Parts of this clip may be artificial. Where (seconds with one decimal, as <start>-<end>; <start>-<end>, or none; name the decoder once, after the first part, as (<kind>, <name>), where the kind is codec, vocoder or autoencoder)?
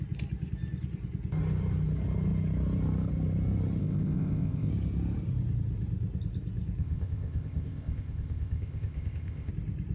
3.8-4.7 (codec, ZipCodec); 6.8-9.5